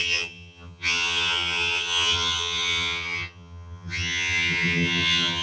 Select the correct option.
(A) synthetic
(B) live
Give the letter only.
A